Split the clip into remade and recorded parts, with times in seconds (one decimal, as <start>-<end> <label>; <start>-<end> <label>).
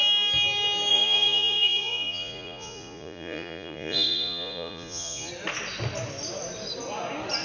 0.0-0.9 recorded; 0.9-5.3 remade; 5.3-7.4 recorded